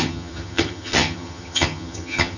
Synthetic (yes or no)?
yes